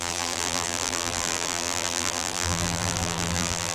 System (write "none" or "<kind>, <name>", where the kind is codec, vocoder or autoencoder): vocoder, BigVGAN v2